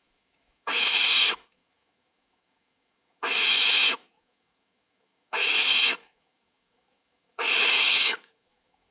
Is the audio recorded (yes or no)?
no